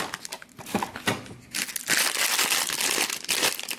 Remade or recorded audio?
recorded